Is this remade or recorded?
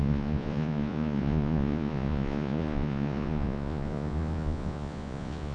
remade